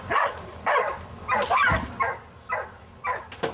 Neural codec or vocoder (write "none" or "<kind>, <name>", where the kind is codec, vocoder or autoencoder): none